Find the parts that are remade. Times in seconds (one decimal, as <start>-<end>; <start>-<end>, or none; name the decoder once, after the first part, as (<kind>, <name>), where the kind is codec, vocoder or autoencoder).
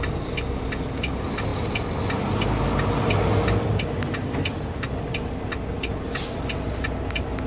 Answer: none